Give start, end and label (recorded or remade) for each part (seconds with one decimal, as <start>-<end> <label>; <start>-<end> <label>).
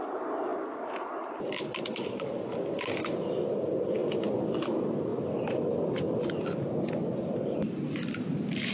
0.0-2.5 remade; 2.5-3.5 recorded; 3.5-8.7 remade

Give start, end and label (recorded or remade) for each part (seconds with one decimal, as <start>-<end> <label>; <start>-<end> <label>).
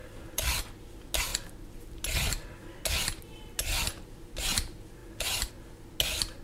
0.0-0.6 remade; 0.6-5.0 recorded; 5.0-5.5 remade; 5.5-6.4 recorded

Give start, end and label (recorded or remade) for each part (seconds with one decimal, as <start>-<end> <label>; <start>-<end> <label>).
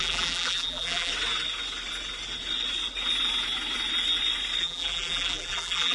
0.0-1.1 remade; 1.1-4.6 recorded; 4.6-5.9 remade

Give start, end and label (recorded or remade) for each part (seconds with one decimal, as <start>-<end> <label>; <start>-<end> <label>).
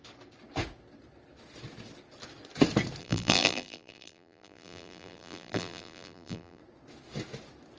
0.0-3.0 recorded; 3.0-6.6 remade; 6.6-7.8 recorded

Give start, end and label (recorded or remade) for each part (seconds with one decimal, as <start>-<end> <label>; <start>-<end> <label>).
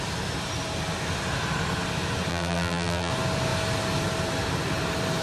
0.0-2.3 recorded; 2.3-3.1 remade; 3.1-5.2 recorded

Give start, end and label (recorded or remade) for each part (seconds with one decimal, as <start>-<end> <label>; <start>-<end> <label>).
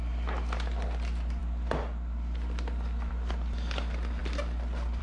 0.0-5.0 recorded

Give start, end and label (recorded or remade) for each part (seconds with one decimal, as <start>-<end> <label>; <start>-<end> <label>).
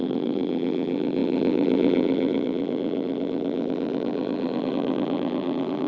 0.0-5.9 remade